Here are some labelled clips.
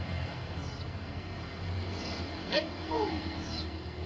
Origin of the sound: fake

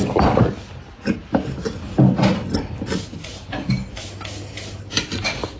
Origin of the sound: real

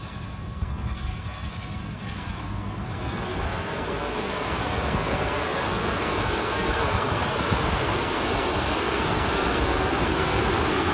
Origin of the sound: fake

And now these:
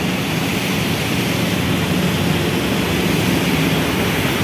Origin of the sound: real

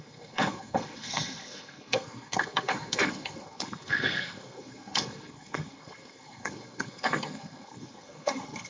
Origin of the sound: fake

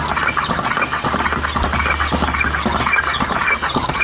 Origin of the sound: real